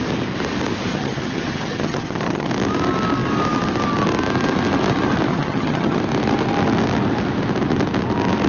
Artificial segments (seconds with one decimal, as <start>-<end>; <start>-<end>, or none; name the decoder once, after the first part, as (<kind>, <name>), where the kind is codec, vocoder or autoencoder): 0.9-2.5 (vocoder, HiFi-GAN); 5.3-6.0